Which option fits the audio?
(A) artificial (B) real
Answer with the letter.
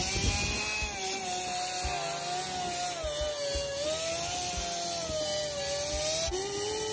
B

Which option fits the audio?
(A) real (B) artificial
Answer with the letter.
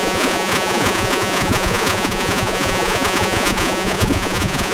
B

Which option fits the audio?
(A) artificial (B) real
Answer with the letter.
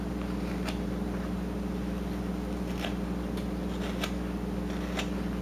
B